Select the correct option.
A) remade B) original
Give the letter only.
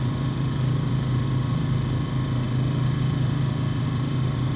A